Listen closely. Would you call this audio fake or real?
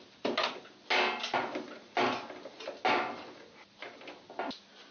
real